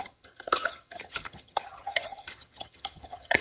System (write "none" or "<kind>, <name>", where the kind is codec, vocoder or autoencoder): vocoder, HiFi-GAN